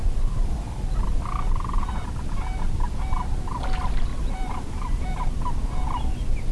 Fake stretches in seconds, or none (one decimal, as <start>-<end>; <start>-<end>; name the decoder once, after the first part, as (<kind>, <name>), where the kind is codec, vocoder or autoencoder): 0.0-3.2 (vocoder, BigVGAN v2); 4.1-5.2